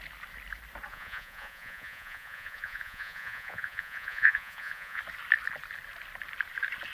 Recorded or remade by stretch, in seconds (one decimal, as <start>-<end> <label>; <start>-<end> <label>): 0.0-0.9 recorded; 0.9-5.0 remade; 5.0-6.9 recorded